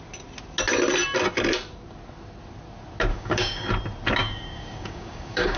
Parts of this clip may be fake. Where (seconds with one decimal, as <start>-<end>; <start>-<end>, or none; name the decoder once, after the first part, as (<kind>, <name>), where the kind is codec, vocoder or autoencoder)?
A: 3.1-3.7 (codec, DAC); 4.2-5.6